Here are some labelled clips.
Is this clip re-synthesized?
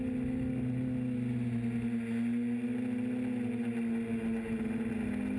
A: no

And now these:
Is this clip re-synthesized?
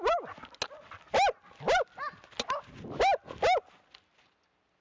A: no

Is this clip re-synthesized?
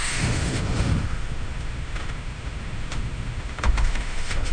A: yes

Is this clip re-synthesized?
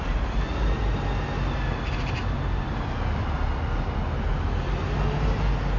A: no